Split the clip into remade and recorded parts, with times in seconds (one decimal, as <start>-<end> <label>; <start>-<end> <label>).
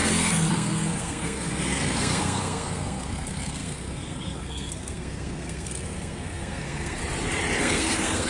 0.0-7.0 remade; 7.0-7.6 recorded; 7.6-8.3 remade